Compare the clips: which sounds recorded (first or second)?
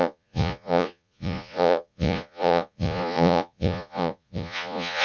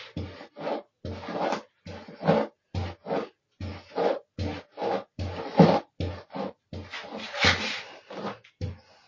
second